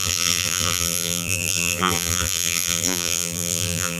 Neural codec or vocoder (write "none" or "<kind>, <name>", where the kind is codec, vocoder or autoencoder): vocoder, BigVGAN v2